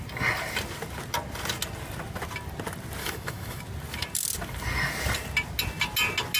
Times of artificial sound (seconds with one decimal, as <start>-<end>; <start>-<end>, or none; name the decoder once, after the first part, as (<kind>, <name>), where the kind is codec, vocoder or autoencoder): 3.0-3.6 (autoencoder, DAC-VAE)